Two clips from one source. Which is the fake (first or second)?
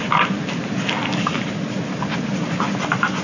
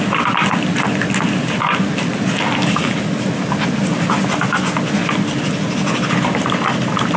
first